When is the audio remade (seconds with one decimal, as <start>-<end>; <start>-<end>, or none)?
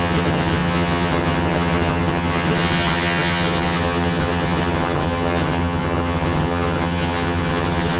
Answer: 0.0-8.0